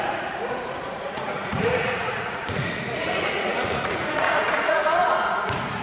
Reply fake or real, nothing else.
fake